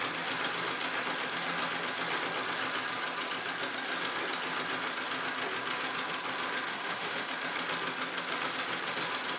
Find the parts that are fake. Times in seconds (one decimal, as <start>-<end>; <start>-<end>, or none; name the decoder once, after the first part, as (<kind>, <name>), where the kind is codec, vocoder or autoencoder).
6.7-7.3 (autoencoder, DAC-VAE)